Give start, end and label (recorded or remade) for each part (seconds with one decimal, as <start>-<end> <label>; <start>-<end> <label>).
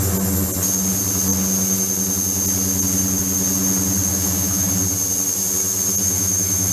0.0-4.1 recorded; 4.1-4.7 remade; 4.7-6.0 recorded; 6.0-6.7 remade